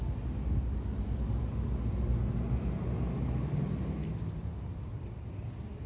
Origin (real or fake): real